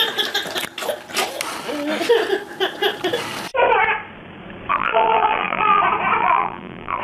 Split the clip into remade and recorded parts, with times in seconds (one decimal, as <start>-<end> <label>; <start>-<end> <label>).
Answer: 0.0-4.7 recorded; 4.7-5.8 remade; 5.8-6.2 recorded; 6.2-7.0 remade